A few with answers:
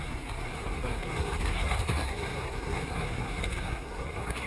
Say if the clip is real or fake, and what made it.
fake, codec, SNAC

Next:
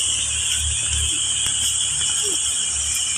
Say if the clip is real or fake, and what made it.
real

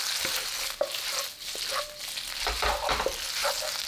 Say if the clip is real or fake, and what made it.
real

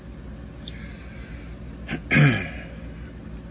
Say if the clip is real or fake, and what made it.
real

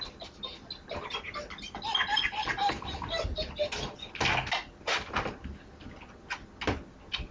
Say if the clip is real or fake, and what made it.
real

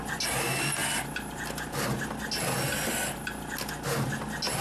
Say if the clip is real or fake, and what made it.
real